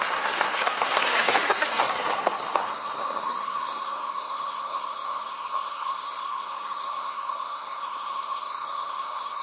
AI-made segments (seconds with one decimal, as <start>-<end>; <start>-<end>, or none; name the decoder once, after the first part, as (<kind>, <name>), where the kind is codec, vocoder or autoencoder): 0.0-9.4 (codec, SNAC)